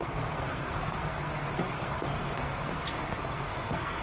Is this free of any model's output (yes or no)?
no